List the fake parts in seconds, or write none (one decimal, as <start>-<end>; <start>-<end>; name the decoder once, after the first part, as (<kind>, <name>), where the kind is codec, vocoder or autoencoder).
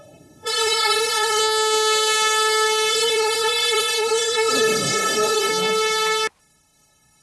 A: 0.0-1.4 (codec, SNAC); 2.9-5.5; 6.4-7.2